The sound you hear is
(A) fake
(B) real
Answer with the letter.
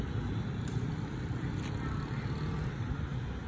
B